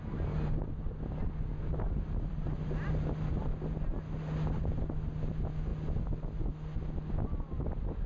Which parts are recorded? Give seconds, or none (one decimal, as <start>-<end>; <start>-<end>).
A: 0.0-8.1